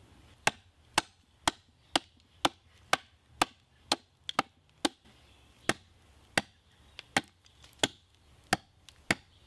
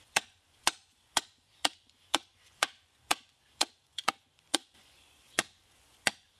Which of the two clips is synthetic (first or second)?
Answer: second